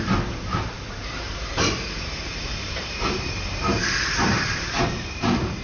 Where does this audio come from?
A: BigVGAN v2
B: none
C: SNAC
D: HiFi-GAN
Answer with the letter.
A